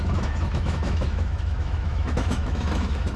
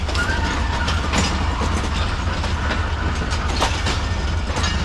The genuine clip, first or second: second